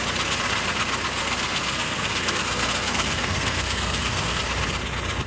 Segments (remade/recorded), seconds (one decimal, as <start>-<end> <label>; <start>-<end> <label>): 0.0-1.2 recorded; 1.2-4.4 remade; 4.4-5.3 recorded